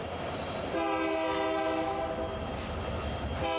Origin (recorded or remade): recorded